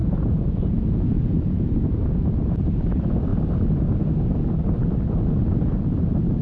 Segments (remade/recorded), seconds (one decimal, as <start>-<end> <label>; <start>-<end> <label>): 0.0-2.2 remade; 2.2-6.4 recorded